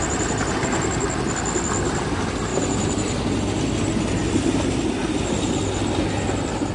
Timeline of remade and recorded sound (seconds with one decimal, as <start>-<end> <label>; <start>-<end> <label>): 0.0-2.5 recorded; 2.5-3.9 remade; 3.9-5.0 recorded; 5.0-5.6 remade; 5.6-6.7 recorded